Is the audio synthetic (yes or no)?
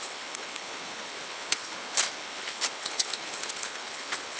yes